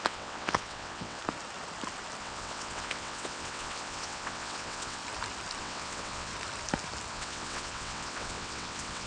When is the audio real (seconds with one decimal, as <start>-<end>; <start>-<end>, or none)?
1.2-2.2; 5.0-5.6; 6.3-7.1